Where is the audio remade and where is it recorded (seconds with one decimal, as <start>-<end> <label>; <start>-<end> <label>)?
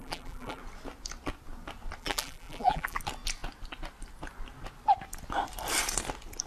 0.0-0.6 remade; 0.6-2.0 recorded; 2.0-3.0 remade; 3.0-6.5 recorded